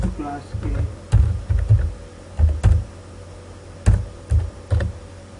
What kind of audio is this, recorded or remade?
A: recorded